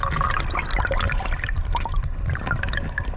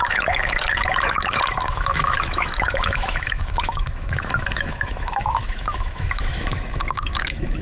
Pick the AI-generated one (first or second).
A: second